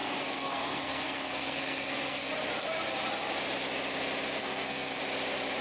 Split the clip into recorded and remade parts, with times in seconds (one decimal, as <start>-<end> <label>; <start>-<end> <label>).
0.0-2.3 remade; 2.3-4.4 recorded; 4.4-5.0 remade; 5.0-5.6 recorded

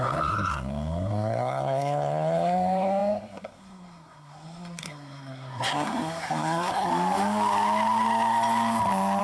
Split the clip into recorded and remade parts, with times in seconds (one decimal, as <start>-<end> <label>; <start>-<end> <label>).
0.0-6.9 remade; 6.9-9.2 recorded